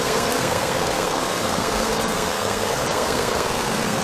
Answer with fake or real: fake